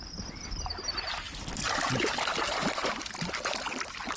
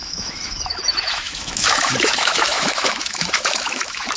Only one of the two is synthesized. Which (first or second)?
second